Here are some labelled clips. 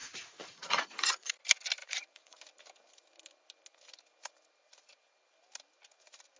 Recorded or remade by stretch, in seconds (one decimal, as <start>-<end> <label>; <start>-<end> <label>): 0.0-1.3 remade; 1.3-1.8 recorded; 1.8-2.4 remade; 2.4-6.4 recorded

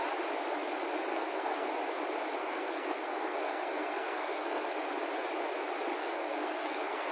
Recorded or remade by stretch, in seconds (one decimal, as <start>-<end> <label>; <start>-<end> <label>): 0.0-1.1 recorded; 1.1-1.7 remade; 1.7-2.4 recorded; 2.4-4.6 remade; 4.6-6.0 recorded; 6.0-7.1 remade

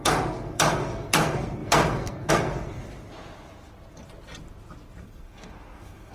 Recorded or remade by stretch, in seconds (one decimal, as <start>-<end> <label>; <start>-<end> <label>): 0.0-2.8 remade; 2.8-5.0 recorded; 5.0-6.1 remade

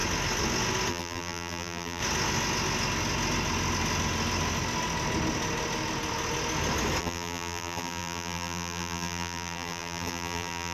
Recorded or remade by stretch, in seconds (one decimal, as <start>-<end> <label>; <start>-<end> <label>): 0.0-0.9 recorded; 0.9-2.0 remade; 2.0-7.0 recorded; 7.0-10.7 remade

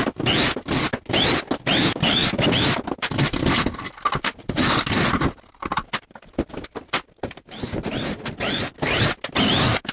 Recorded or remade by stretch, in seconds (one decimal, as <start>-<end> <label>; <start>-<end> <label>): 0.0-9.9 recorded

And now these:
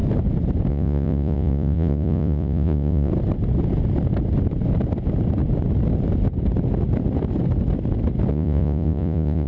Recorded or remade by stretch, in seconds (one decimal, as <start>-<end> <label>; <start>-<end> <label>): 0.0-0.7 recorded; 0.7-3.1 remade; 3.1-8.3 recorded; 8.3-9.5 remade

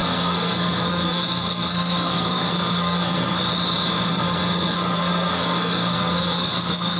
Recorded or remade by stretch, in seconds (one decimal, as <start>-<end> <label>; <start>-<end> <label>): 0.0-3.4 remade; 3.4-4.1 recorded; 4.1-7.0 remade

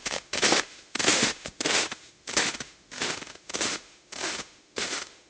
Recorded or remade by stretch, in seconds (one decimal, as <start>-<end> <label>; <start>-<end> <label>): 0.0-5.3 remade